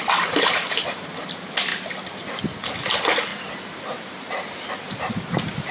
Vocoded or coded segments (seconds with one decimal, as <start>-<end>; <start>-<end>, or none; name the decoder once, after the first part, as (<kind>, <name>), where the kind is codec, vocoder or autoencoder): 3.3-4.7 (vocoder, BigVGAN v2)